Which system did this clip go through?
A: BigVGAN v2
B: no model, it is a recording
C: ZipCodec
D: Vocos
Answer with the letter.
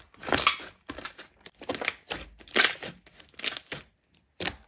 B